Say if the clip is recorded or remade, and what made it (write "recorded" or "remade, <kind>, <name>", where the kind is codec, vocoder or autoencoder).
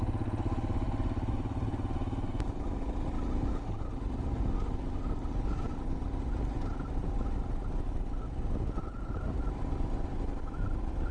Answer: recorded